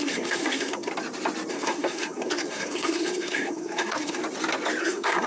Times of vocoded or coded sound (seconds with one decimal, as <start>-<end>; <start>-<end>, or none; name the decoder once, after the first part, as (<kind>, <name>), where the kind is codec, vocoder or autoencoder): 0.0-0.9 (codec, SNAC); 1.5-4.2; 4.8-5.3